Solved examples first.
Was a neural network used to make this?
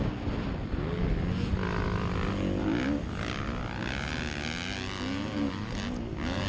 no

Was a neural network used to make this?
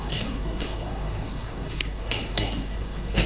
yes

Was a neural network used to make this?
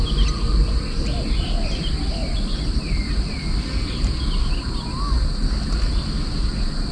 no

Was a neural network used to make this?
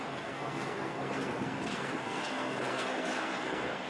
yes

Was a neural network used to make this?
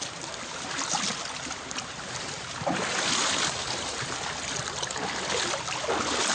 no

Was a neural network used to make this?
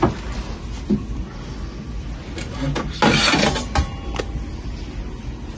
no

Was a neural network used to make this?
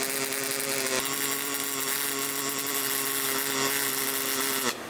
no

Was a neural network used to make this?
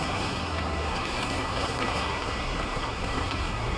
yes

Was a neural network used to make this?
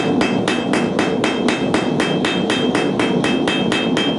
no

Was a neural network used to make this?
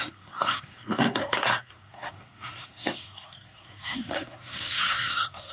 yes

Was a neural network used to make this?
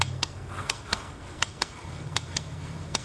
yes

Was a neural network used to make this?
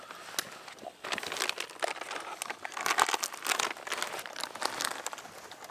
no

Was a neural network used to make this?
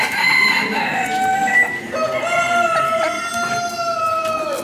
no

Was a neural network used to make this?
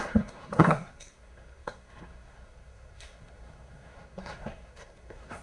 yes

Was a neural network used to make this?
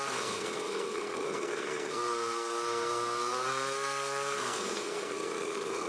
yes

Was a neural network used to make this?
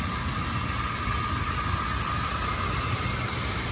no